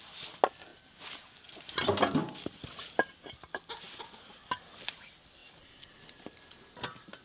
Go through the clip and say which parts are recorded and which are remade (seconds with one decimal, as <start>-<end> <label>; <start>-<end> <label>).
0.0-7.2 recorded